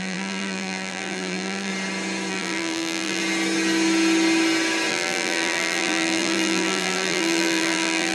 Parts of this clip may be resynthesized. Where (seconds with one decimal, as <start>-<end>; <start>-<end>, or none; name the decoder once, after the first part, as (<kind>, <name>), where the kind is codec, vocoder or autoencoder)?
0.0-1.7 (vocoder, BigVGAN v2); 2.3-3.2; 4.9-8.1